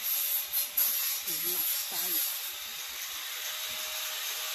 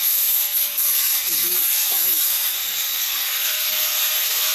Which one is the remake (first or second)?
second